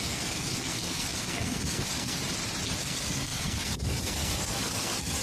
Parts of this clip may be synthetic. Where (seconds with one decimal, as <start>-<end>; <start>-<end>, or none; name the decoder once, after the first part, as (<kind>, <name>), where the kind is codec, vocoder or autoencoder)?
0.0-2.2 (codec, SNAC); 2.8-5.2